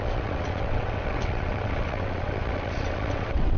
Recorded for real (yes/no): no